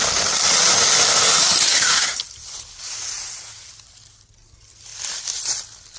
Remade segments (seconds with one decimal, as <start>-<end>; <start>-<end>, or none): 1.7-2.2

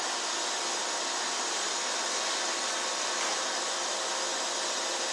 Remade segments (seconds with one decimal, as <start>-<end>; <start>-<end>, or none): none

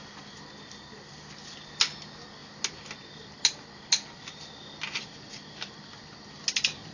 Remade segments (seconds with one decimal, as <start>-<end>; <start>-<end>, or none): none

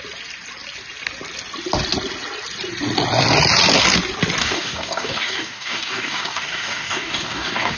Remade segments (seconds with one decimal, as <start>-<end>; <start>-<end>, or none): 4.4-7.8

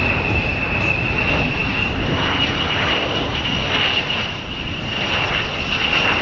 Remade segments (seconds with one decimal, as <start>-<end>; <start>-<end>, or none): none

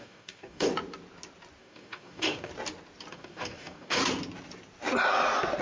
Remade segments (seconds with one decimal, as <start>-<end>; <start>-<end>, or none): 0.0-0.7; 1.6-2.5; 3.1-4.0

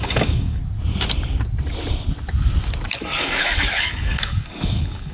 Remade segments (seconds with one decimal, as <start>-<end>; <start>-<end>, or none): 0.0-0.6; 2.9-5.1

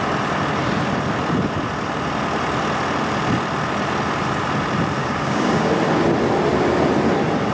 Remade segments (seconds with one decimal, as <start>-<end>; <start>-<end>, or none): 5.0-5.7